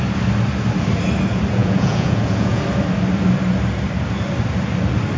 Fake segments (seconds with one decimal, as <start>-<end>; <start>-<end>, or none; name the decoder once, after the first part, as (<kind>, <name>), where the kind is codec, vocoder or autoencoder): 1.6-2.6 (vocoder, Vocos)